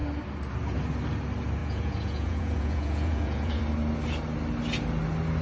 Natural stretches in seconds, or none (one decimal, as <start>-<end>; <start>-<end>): 0.0-1.6; 3.6-5.4